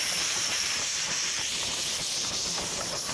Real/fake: fake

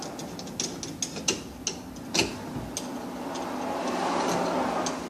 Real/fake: real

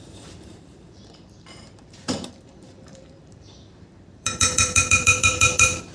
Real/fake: fake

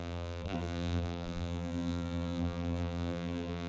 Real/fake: fake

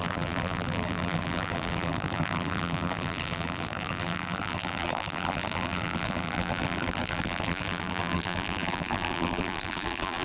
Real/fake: fake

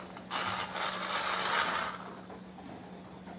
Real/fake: real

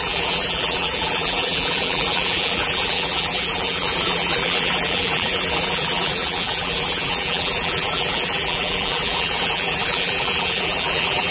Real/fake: fake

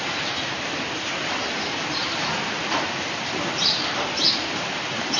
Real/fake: fake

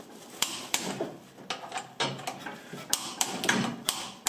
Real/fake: real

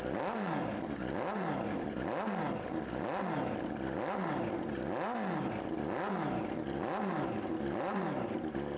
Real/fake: real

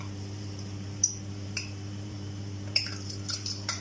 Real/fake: fake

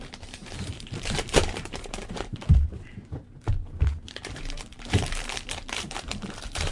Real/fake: fake